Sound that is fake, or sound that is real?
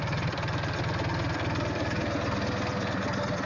real